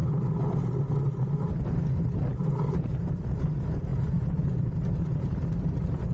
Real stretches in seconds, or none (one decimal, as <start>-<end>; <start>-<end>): 0.0-2.3; 3.4-6.1